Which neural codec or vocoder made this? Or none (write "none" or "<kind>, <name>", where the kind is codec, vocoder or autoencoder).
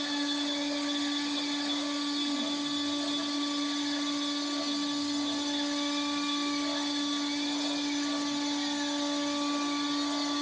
none